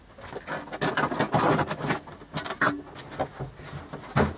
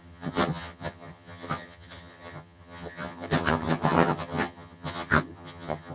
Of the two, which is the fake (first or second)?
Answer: second